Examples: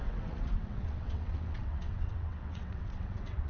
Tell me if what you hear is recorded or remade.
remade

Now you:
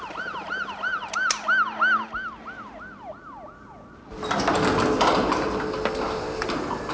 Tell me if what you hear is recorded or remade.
recorded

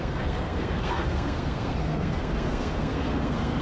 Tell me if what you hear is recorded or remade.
remade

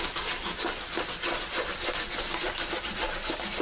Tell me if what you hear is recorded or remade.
recorded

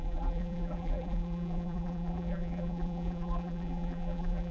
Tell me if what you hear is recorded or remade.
remade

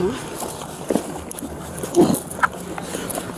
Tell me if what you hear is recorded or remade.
recorded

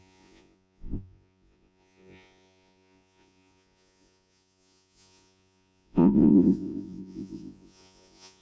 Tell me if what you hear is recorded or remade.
remade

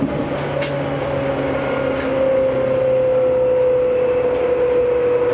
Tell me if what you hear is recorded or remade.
recorded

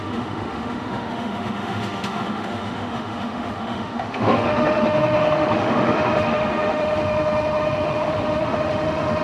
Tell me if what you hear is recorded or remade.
remade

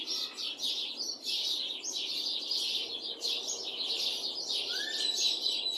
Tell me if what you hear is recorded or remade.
recorded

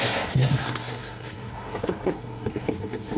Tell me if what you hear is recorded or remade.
remade